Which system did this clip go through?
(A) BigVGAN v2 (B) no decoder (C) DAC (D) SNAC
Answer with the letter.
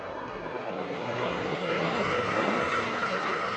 D